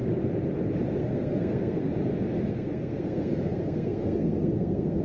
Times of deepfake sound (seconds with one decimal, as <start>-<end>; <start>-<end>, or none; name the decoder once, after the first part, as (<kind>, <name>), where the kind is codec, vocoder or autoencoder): 1.0-1.9 (codec, SNAC); 2.5-5.0